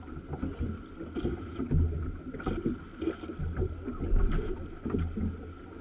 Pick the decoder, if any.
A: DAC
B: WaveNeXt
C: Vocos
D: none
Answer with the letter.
D